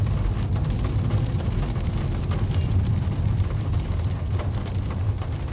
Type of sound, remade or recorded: recorded